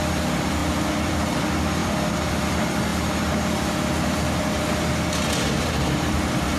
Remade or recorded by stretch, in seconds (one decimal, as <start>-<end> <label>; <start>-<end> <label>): 0.0-1.8 recorded; 1.8-2.5 remade; 2.5-6.6 recorded